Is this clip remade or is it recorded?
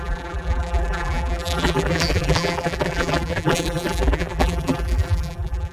remade